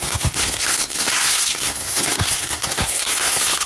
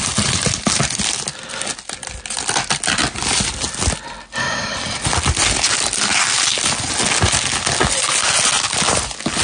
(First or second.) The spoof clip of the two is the first